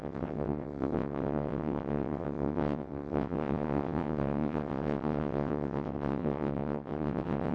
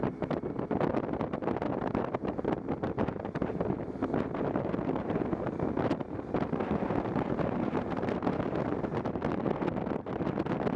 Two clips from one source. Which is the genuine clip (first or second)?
second